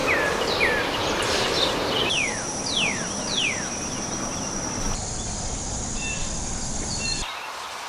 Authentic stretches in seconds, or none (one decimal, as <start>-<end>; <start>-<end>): 0.0-1.0; 1.7-5.0; 5.7-7.9